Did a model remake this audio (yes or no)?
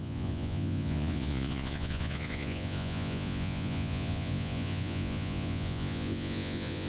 yes